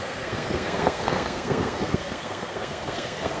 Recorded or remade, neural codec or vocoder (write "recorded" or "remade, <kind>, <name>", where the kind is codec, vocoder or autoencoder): remade, codec, SNAC